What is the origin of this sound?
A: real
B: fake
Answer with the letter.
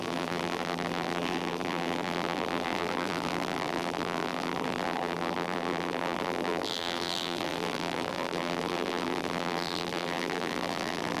B